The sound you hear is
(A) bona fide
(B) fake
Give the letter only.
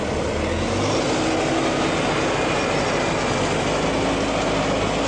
A